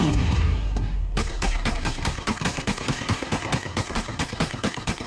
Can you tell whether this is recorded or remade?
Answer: remade